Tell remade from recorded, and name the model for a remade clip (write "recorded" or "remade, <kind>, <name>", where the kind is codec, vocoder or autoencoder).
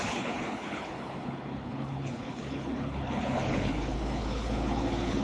remade, codec, HILCodec